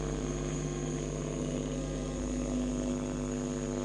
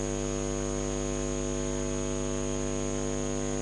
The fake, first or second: first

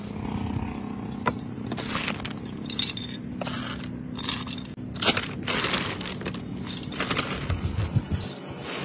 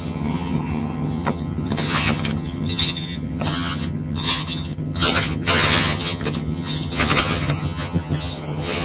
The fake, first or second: second